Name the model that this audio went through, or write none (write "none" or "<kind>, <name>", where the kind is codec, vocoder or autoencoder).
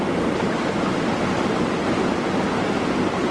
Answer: none